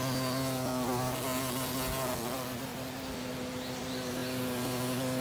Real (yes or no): yes